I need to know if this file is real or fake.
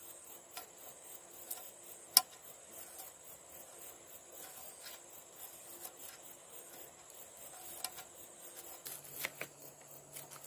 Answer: real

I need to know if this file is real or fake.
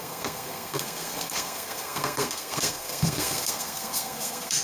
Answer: fake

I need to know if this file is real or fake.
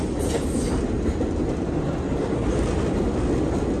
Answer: real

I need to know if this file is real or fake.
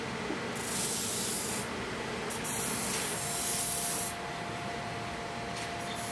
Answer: real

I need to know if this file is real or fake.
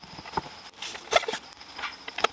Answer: real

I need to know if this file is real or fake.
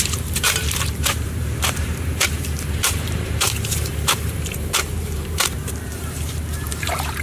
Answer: fake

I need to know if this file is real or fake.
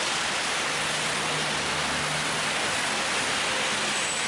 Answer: real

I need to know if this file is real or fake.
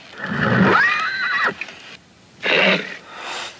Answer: real